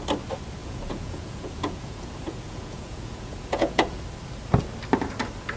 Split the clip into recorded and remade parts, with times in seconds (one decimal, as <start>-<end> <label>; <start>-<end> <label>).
0.0-0.6 recorded; 0.6-4.0 remade; 4.0-5.6 recorded